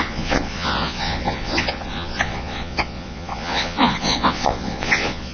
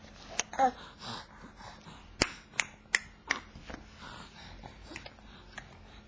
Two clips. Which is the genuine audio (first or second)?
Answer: second